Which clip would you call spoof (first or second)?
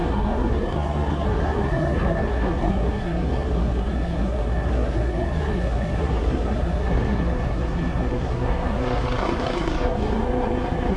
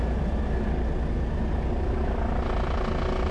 first